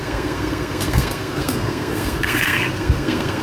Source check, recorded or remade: remade